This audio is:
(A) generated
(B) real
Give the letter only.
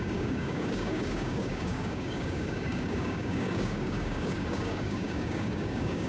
A